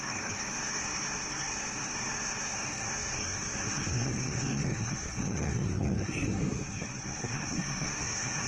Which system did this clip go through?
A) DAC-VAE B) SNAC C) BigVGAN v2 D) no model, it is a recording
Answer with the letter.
B